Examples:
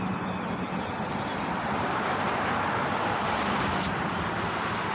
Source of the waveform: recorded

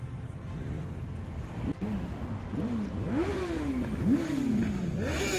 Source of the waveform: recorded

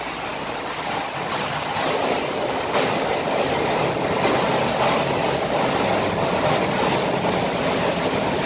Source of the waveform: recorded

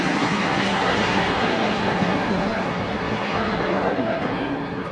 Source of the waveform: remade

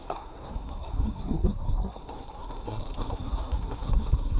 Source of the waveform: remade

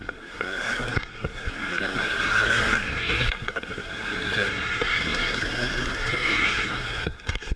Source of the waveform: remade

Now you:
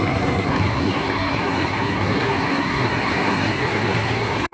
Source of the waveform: remade